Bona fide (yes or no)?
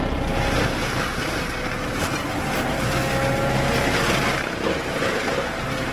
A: yes